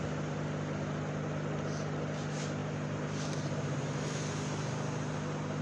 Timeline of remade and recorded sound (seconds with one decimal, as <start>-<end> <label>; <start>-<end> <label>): 0.0-5.6 recorded